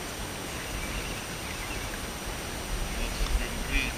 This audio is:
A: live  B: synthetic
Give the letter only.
A